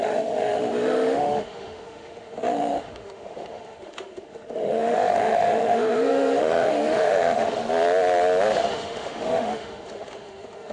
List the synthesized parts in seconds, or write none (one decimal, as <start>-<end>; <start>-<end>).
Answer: 0.0-7.6; 8.6-10.7